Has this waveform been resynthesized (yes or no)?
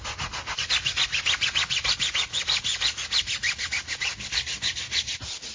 no